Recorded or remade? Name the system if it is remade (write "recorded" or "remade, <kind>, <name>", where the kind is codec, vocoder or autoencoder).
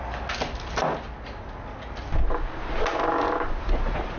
recorded